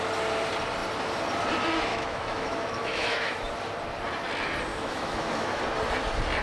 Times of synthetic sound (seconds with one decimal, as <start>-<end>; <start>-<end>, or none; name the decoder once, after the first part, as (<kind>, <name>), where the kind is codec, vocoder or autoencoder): 1.9-3.5 (autoencoder, DAC-VAE); 4.7-5.6